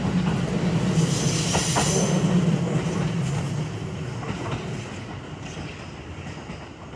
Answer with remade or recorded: recorded